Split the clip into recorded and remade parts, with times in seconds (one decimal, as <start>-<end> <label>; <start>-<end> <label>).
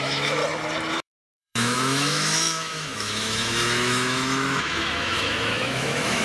0.0-0.4 remade; 0.4-0.9 recorded; 0.9-6.2 remade